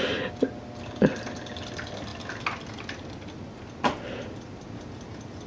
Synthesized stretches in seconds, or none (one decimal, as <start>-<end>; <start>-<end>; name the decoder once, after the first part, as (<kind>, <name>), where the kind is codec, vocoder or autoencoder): none